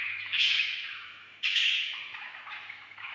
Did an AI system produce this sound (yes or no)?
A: yes